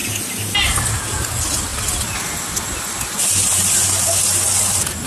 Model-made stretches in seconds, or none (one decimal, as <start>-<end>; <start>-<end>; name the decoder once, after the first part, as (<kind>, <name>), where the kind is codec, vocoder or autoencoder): none

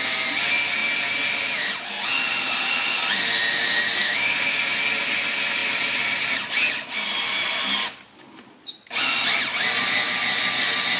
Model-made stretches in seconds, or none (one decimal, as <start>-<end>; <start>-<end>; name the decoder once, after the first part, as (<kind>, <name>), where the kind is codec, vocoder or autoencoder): 4.0-4.6 (autoencoder, DAC-VAE)

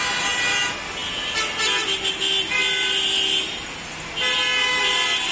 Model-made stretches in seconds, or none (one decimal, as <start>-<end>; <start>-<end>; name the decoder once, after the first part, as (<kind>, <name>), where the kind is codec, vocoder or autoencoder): none

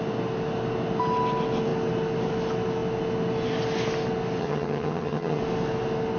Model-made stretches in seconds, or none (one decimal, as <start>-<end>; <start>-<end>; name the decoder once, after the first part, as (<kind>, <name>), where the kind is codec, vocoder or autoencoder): 4.4-5.4 (vocoder, HiFi-GAN)

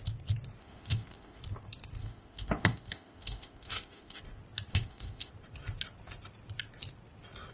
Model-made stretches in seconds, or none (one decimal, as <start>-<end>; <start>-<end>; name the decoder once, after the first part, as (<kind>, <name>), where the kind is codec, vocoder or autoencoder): 0.6-1.4 (autoencoder, DAC-VAE); 2.0-4.2; 4.7-5.3